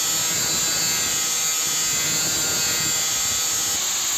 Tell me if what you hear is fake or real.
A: real